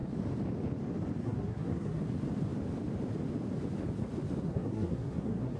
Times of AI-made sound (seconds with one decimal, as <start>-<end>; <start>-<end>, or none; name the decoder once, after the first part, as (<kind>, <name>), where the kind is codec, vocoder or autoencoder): 1.2-2.0 (codec, SNAC); 4.4-5.6

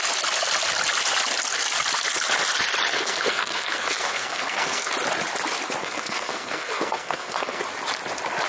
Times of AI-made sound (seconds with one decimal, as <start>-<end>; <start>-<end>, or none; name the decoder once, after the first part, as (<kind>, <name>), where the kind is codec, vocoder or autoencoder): 2.9-4.9 (codec, SNAC); 5.8-7.6